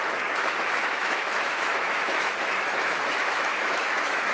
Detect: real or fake fake